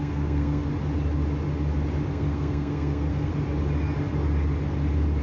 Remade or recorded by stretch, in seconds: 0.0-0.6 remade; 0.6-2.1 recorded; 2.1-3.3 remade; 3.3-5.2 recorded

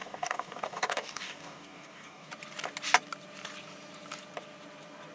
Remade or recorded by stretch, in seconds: 0.0-2.3 remade; 2.3-5.1 recorded

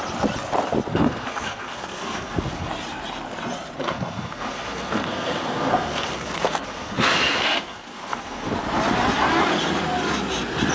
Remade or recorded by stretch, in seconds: 0.0-0.9 recorded; 0.9-2.7 remade; 2.7-3.8 recorded; 3.8-8.5 remade; 8.5-10.7 recorded

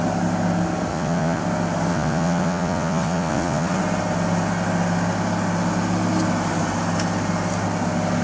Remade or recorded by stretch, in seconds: 0.0-0.9 recorded; 0.9-1.4 remade; 1.4-1.9 recorded; 1.9-3.8 remade; 3.8-8.2 recorded